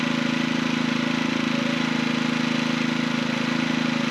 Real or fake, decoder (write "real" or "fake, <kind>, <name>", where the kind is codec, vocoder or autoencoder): real